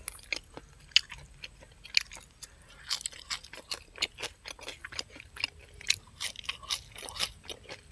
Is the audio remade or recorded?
recorded